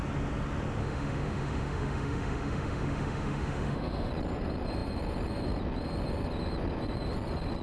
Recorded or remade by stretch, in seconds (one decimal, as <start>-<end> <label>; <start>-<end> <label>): 0.0-0.8 recorded; 0.8-4.1 remade; 4.1-7.6 recorded